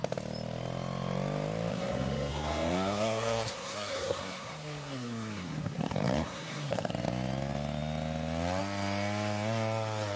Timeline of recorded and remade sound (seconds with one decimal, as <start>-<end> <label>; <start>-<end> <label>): 0.0-1.7 recorded; 1.7-6.9 remade; 6.9-10.2 recorded